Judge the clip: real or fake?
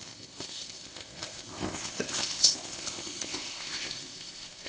fake